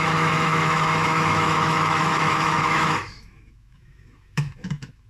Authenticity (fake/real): fake